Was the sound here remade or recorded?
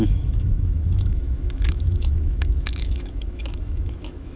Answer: remade